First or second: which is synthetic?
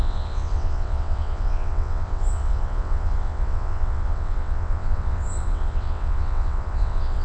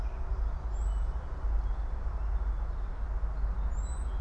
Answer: first